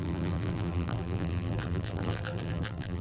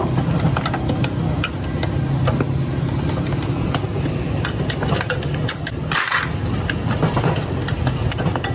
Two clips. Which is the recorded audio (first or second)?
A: second